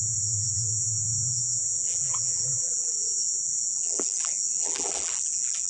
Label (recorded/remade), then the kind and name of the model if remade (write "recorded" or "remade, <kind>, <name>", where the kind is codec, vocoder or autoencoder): remade, vocoder, BigVGAN v2